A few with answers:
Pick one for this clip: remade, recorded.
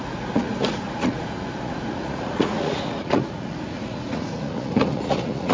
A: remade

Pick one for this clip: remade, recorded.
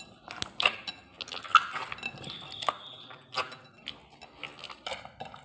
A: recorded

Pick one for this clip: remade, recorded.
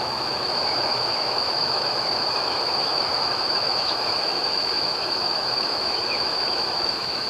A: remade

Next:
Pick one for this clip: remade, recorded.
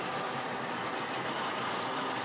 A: recorded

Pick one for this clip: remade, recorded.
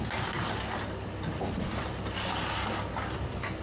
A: recorded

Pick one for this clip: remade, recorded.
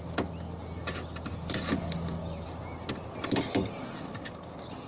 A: recorded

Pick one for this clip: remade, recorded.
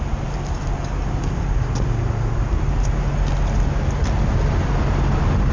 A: recorded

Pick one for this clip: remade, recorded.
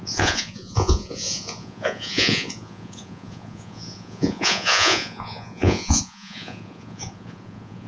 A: remade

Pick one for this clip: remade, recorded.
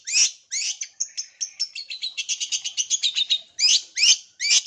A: recorded